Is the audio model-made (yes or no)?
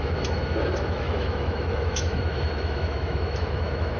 yes